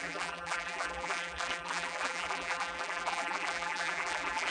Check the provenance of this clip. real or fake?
fake